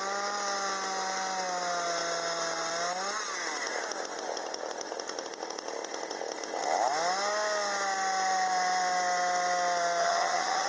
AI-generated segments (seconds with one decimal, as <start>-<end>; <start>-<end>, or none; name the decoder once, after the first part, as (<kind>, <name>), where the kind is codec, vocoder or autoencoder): 10.0-10.7 (vocoder, HiFi-GAN)